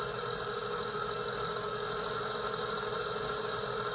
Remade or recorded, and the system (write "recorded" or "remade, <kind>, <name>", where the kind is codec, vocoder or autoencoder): recorded